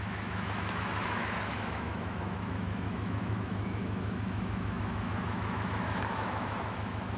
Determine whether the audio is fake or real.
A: fake